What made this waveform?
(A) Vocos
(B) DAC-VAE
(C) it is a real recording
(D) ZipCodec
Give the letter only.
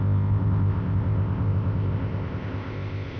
D